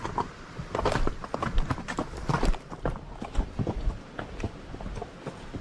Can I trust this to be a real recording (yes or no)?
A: yes